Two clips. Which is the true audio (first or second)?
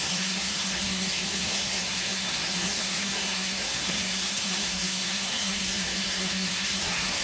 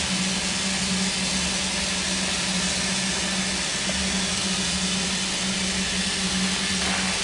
second